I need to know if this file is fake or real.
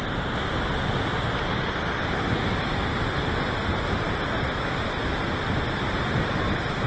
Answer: real